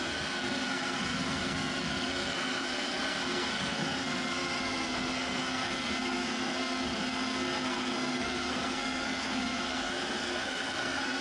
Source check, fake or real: fake